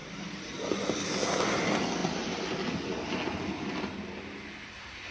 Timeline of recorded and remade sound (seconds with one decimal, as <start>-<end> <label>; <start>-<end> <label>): 0.0-1.1 remade; 1.1-5.1 recorded